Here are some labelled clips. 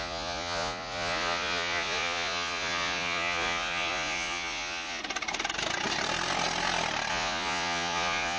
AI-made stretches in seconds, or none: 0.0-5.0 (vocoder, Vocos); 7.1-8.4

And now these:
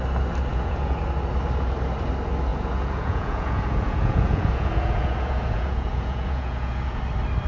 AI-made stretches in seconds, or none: 0.5-1.0 (vocoder, Vocos); 2.5-7.0

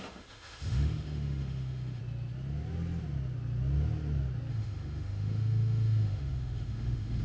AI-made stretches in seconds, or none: 0.0-2.0 (autoencoder, DAC-VAE); 4.5-7.2

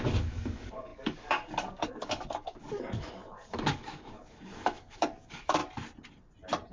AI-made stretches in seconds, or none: 0.0-5.6 (codec, DAC)

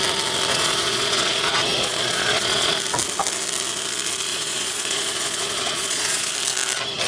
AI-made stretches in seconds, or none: 0.5-2.8 (vocoder, Vocos); 4.3-6.3

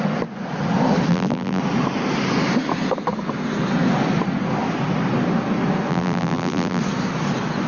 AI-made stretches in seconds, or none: 1.1-1.6 (vocoder, BigVGAN v2); 5.9-6.8

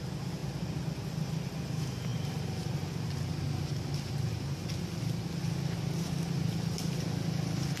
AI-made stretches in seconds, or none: none

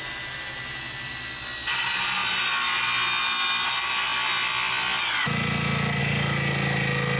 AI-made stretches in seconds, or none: none